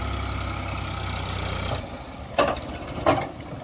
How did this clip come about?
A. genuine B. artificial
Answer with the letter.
A